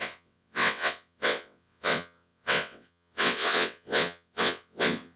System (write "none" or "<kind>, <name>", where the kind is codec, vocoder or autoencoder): vocoder, WaveNeXt